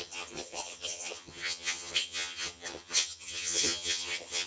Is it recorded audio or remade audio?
remade